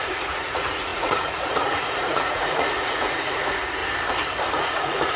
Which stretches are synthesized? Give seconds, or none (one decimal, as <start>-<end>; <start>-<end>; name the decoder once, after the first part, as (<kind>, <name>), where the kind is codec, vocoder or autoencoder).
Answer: 0.0-3.8 (vocoder, Vocos); 4.6-5.2